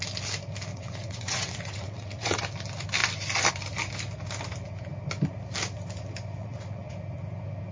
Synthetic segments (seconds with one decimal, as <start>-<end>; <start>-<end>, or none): 0.7-2.4; 6.4-6.9